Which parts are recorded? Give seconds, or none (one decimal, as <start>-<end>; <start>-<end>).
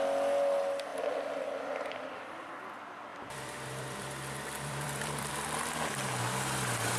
0.0-0.9; 2.5-3.1; 5.3-7.0